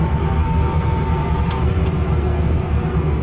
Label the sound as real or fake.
fake